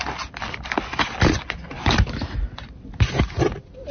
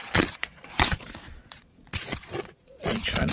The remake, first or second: second